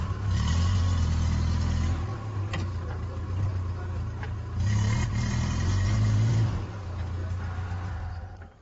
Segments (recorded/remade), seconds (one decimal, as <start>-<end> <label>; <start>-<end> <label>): 0.0-7.2 remade; 7.2-7.9 recorded; 7.9-8.6 remade